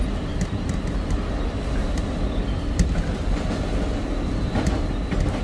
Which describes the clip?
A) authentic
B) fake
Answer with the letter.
A